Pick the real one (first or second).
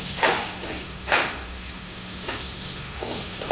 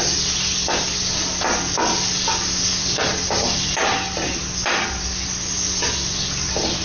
second